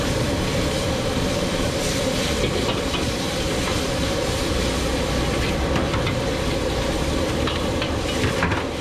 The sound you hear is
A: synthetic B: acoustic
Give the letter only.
A